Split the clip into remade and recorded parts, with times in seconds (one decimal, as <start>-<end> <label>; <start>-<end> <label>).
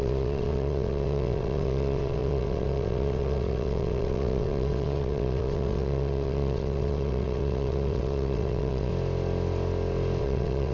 0.0-8.9 remade; 8.9-10.2 recorded; 10.2-10.7 remade